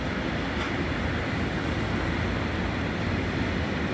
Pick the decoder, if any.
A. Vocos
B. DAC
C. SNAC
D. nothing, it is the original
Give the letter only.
D